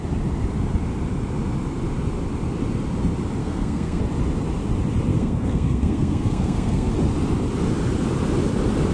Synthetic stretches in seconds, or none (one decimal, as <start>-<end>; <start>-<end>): 3.4-4.0; 5.1-6.9